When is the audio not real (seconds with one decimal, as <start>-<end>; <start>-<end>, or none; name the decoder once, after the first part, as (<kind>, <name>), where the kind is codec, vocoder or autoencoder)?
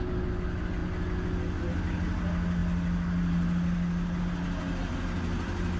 none